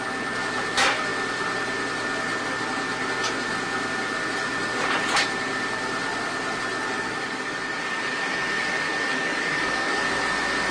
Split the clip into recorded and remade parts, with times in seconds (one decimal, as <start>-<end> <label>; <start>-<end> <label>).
0.0-6.9 recorded; 6.9-10.2 remade; 10.2-10.7 recorded